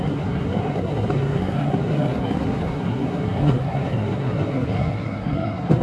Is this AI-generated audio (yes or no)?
yes